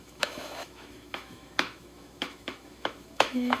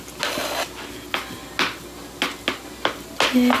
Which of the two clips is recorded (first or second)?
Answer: second